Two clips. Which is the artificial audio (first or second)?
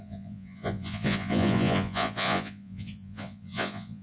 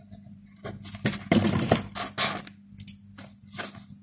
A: first